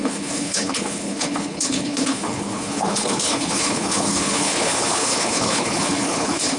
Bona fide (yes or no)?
no